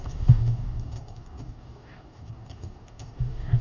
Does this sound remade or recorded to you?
remade